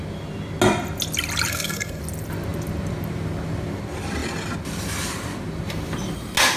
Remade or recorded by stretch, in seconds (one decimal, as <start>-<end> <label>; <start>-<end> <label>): 0.0-1.5 recorded; 1.5-2.0 remade; 2.0-6.6 recorded